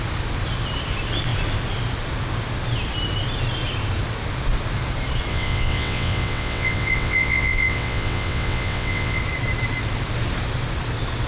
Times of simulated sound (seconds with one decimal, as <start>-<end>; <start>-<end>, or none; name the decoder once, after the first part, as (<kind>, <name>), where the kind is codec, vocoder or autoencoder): 5.3-9.2 (vocoder, WaveNeXt)